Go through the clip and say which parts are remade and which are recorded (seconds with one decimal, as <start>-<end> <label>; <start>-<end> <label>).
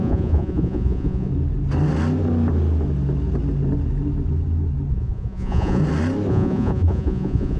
0.0-1.3 remade; 1.3-4.9 recorded; 4.9-5.8 remade; 5.8-6.3 recorded; 6.3-7.6 remade